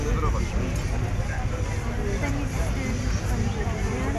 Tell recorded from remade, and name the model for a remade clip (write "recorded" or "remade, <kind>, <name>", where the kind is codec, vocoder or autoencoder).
recorded